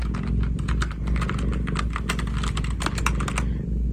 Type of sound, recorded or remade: recorded